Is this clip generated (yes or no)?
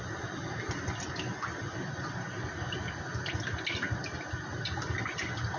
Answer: no